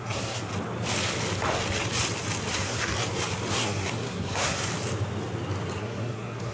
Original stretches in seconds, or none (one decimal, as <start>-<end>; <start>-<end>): 0.5-2.5; 2.9-3.5; 4.7-5.8